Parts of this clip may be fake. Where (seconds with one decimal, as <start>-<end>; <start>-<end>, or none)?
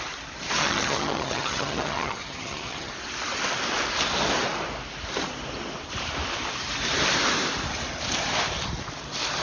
0.6-2.9